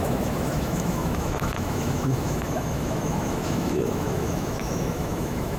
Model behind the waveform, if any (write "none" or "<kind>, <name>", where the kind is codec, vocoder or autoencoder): autoencoder, DAC-VAE